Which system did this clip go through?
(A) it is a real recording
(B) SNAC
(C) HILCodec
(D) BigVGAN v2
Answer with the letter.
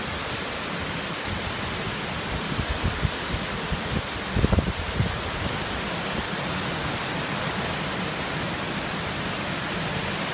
A